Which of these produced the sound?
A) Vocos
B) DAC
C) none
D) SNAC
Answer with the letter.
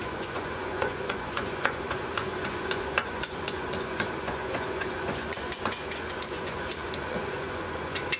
A